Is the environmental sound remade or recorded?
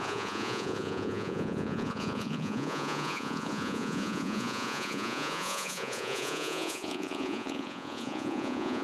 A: remade